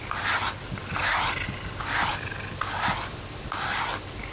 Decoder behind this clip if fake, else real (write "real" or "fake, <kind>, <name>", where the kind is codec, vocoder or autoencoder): real